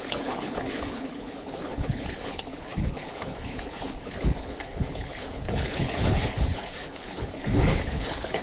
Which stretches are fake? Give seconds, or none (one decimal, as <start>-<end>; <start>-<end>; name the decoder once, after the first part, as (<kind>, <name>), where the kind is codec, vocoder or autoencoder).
0.0-8.4 (codec, HILCodec)